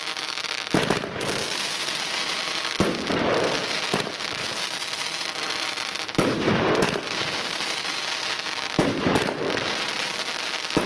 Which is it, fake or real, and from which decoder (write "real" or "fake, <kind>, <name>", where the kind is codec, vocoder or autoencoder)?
real